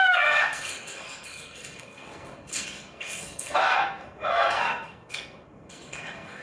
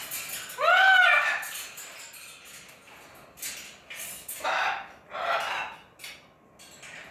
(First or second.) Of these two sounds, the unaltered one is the second